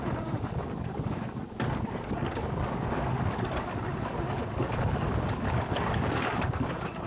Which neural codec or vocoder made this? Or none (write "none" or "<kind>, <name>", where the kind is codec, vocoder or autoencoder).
codec, DAC